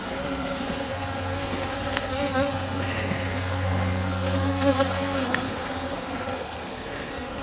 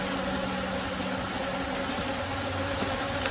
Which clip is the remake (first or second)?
first